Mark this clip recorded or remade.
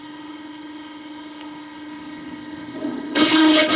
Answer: remade